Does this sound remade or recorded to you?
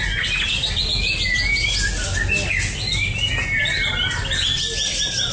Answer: recorded